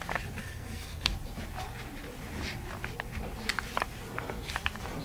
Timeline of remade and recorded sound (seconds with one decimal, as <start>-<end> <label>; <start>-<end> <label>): 0.0-0.4 recorded; 0.4-1.1 remade; 1.1-5.0 recorded